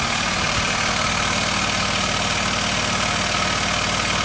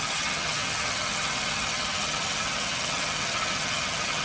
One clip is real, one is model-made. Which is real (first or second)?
first